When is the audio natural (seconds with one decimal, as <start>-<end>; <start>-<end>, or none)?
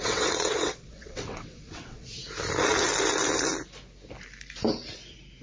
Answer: 2.2-5.4